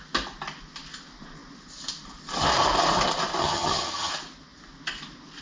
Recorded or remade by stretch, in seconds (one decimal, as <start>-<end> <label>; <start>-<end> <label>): 0.0-3.4 recorded; 3.4-4.1 remade; 4.1-5.4 recorded